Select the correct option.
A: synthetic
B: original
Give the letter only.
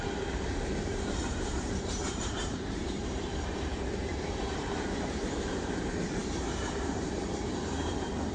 A